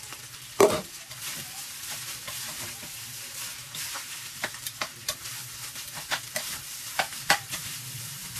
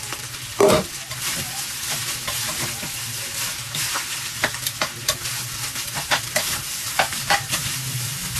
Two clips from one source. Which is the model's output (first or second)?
first